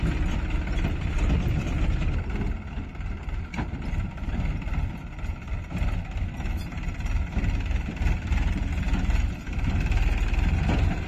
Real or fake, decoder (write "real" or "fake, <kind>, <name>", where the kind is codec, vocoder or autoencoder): real